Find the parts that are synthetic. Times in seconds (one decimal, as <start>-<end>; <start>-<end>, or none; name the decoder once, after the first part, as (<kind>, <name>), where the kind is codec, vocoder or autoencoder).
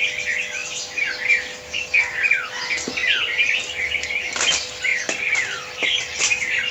0.6-2.5 (vocoder, BigVGAN v2); 4.9-6.2